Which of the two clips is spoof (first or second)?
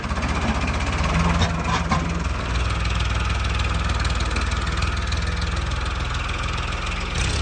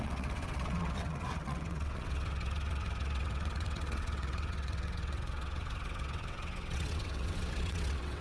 second